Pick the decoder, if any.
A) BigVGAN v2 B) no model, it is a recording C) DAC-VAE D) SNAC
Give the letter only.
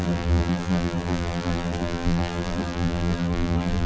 A